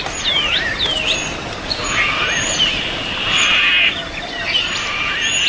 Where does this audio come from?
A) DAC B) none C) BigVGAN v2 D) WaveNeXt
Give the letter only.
B